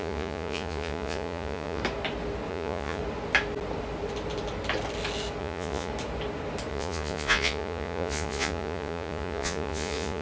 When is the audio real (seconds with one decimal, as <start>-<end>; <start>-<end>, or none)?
1.8-2.5; 3.0-5.4; 5.9-6.7